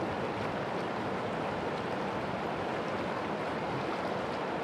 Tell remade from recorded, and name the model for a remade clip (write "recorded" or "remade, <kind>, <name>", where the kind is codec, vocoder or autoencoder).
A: remade, vocoder, BigVGAN v2